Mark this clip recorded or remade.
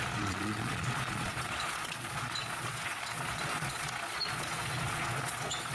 remade